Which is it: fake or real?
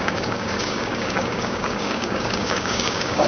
fake